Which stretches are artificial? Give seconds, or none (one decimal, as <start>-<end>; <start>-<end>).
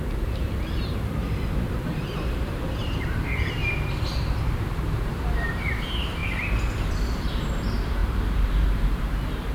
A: 0.0-3.6; 4.2-6.2; 6.9-9.5